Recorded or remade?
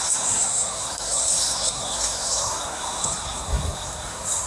remade